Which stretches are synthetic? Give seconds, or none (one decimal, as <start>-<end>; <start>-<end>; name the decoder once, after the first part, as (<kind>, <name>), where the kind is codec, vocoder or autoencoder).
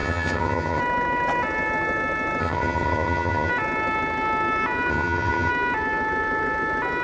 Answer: 0.0-0.8 (vocoder, HiFi-GAN); 2.4-3.5; 4.9-5.5